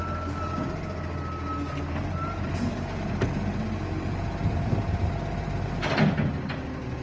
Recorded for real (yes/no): yes